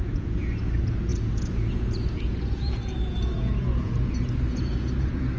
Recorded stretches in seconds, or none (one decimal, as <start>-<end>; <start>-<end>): none